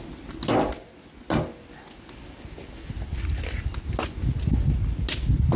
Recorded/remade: recorded